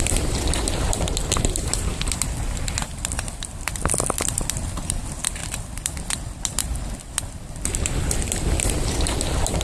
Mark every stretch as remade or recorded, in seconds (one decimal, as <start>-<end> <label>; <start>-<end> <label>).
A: 0.0-9.6 remade